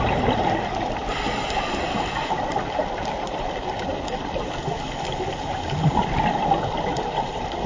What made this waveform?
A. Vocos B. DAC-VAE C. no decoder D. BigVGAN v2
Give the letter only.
D